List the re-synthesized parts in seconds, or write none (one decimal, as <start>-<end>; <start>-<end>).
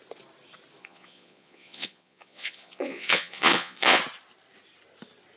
0.8-4.0